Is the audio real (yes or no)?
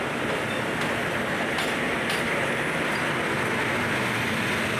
yes